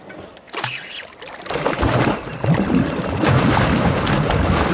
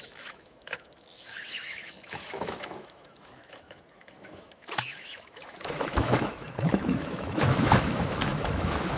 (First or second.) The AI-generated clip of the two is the second